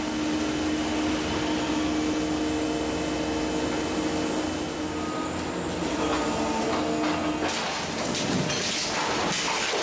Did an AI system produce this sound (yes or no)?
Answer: no